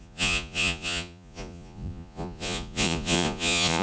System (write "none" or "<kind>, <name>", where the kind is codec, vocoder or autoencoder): vocoder, Vocos